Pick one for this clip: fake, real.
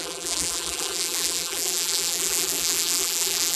fake